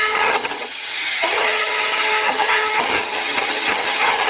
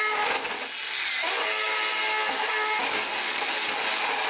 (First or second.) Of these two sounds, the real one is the second